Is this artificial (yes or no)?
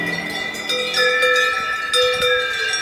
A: no